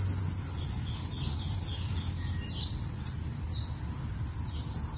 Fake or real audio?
real